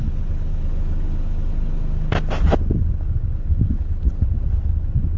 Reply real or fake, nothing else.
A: real